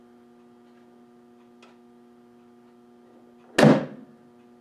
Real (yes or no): yes